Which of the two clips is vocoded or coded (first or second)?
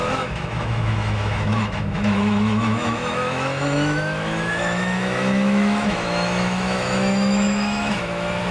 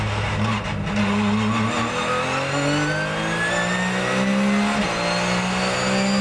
first